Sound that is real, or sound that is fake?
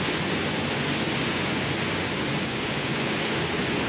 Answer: fake